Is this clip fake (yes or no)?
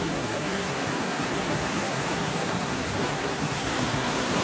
yes